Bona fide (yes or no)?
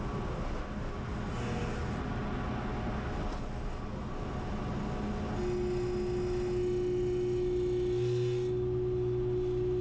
yes